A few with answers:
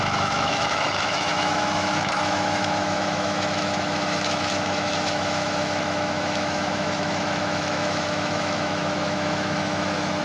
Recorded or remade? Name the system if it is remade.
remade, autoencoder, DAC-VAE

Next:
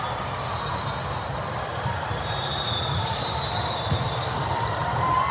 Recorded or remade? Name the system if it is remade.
recorded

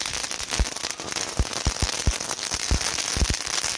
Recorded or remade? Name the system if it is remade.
recorded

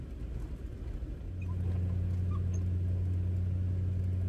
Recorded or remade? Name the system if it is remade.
recorded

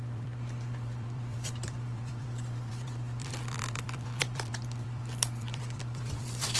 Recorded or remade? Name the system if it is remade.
remade, vocoder, BigVGAN v2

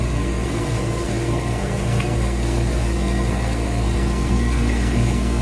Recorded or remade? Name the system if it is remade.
remade, codec, SNAC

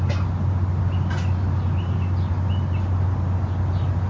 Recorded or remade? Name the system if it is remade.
recorded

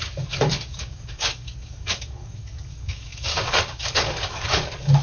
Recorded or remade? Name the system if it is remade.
remade, codec, DAC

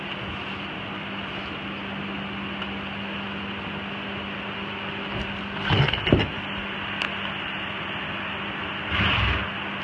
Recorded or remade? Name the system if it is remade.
recorded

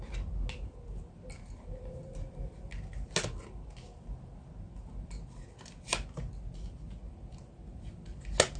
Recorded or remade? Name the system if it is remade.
recorded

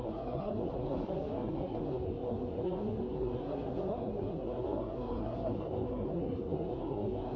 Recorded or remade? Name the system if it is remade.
remade, codec, SNAC